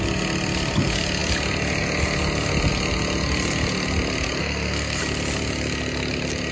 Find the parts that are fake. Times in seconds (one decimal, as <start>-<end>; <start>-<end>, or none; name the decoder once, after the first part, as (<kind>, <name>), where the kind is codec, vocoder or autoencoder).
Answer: 4.4-5.0 (codec, SNAC)